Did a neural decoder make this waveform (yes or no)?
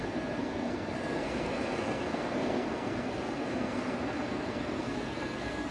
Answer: yes